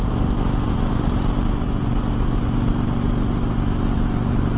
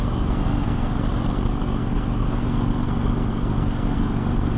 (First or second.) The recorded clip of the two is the first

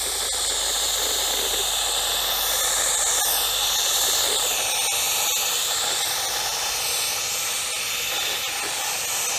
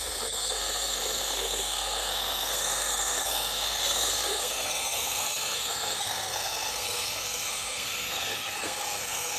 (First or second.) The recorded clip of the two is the first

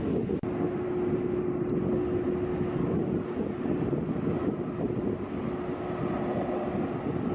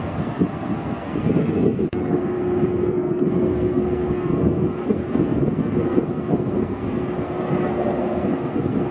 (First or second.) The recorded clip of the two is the first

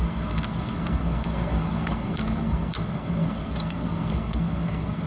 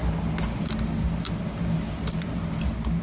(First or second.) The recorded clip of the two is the second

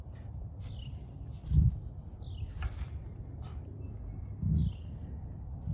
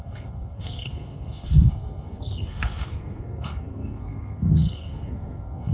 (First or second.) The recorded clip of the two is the first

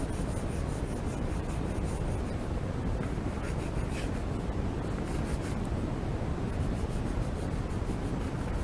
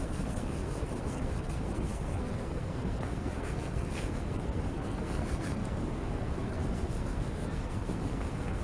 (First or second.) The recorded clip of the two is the first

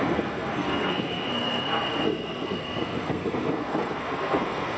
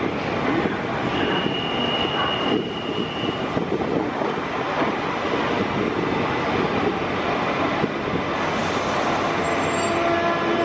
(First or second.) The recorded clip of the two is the second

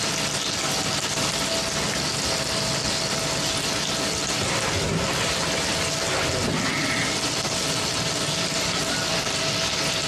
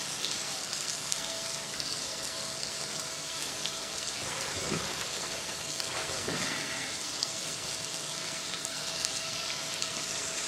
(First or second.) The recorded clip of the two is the first